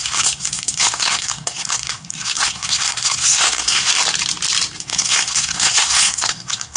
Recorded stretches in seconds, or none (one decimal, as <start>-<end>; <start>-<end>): 3.9-4.8